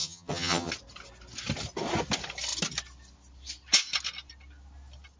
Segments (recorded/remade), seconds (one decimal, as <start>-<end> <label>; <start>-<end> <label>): 0.0-0.7 remade; 0.7-5.2 recorded